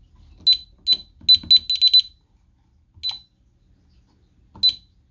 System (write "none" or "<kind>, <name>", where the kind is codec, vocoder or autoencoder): none